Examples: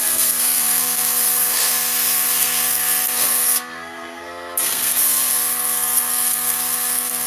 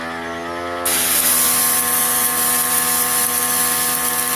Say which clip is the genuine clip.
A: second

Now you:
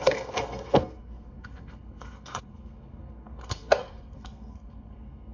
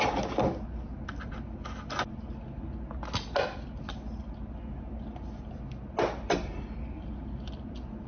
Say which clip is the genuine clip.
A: second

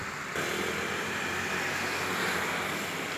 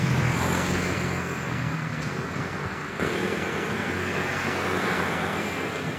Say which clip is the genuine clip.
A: first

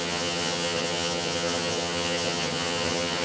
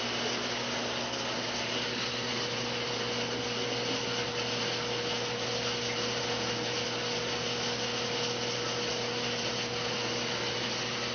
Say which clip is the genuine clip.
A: second